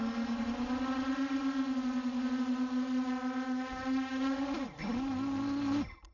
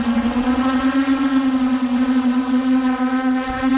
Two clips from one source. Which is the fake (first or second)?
second